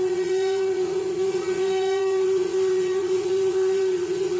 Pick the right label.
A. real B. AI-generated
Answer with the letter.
B